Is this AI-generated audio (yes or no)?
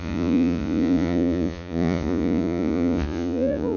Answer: yes